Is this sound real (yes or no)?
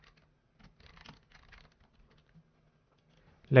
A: yes